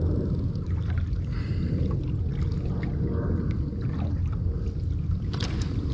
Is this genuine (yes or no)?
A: yes